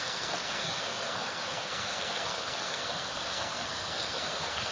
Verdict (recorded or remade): remade